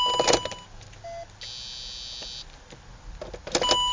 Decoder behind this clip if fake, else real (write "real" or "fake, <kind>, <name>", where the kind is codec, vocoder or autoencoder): real